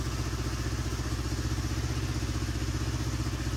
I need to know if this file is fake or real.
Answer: real